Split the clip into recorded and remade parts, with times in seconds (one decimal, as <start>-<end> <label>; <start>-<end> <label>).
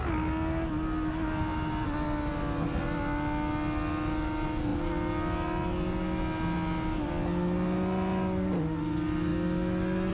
0.0-10.1 recorded